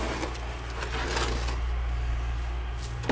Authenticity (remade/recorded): recorded